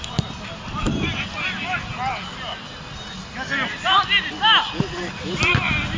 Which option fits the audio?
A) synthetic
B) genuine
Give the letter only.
B